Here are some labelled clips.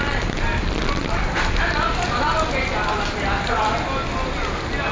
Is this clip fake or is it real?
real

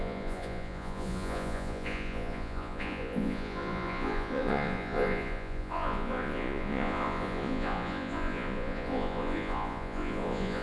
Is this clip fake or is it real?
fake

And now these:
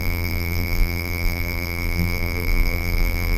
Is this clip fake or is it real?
fake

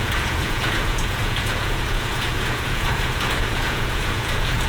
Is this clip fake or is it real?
fake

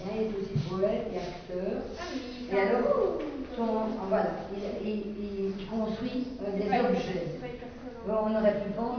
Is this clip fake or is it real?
real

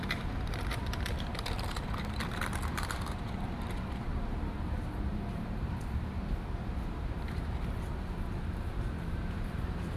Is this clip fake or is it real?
fake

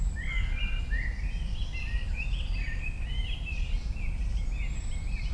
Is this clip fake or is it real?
real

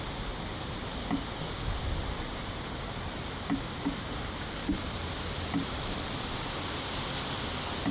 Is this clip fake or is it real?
real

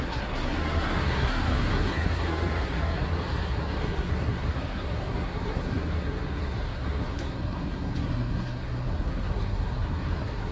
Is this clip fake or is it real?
fake